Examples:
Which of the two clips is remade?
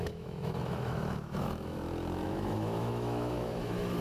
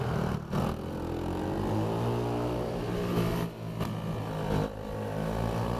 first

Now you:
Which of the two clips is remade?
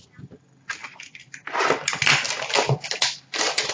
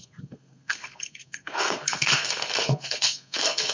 second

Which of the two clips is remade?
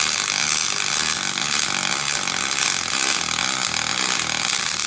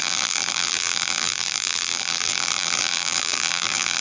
second